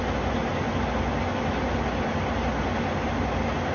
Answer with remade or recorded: recorded